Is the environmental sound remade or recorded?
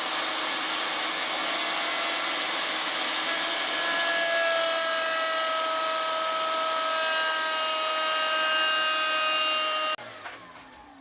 recorded